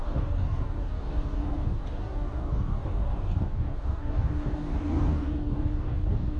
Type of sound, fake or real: fake